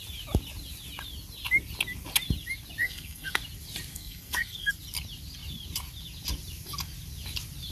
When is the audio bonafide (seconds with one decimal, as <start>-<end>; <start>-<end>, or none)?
0.0-2.8; 3.4-3.9; 4.7-7.7